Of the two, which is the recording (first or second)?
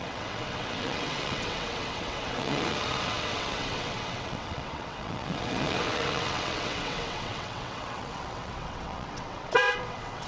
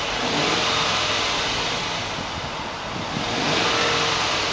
second